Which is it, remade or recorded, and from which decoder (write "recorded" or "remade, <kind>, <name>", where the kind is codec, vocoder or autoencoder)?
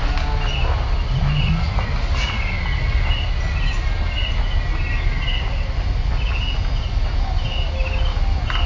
recorded